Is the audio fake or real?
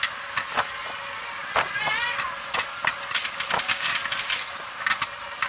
real